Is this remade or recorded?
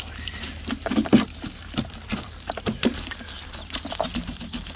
remade